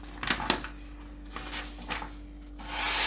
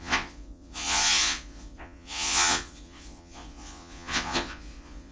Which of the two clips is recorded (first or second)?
first